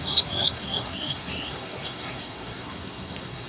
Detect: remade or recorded remade